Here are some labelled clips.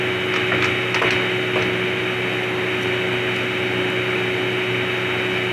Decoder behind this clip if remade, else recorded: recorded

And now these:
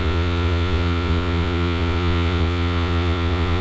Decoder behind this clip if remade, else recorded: remade, vocoder, Vocos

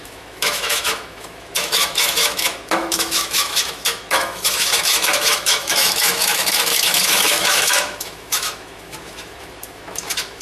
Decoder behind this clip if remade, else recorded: remade, autoencoder, DAC-VAE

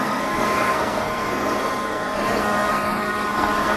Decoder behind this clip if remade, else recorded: remade, codec, SNAC